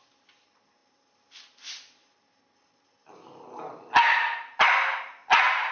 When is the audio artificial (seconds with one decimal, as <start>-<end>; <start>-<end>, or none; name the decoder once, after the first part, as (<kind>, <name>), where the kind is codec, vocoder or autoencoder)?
none